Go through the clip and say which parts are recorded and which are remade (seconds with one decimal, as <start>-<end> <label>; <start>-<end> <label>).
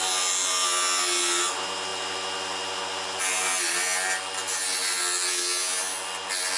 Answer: 0.0-6.6 recorded